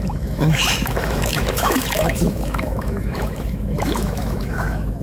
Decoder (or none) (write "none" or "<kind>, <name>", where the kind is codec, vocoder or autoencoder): autoencoder, DAC-VAE